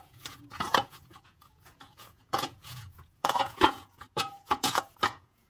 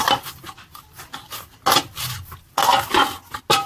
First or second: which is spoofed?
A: first